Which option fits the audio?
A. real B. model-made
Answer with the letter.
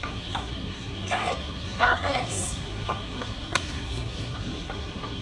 B